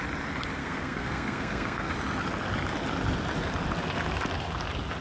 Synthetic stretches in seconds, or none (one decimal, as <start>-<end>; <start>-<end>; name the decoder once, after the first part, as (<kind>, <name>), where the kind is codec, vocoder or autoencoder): 0.6-1.9 (codec, SNAC)